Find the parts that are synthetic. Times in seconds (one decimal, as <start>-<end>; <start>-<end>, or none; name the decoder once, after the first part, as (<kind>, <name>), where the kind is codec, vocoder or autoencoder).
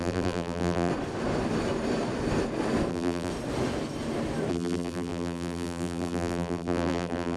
0.0-0.9 (vocoder, BigVGAN v2); 2.9-3.3; 4.5-7.4